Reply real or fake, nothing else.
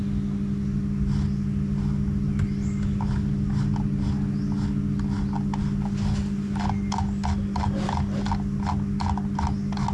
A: real